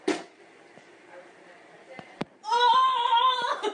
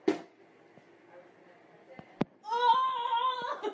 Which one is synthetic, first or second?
first